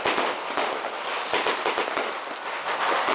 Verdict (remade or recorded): recorded